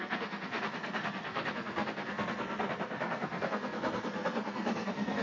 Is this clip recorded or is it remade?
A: remade